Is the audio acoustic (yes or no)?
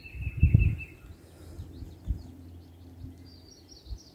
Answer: yes